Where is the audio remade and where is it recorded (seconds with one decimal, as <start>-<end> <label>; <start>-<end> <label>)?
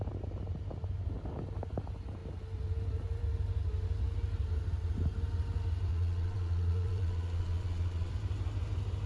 0.0-5.9 recorded; 5.9-8.1 remade; 8.1-9.1 recorded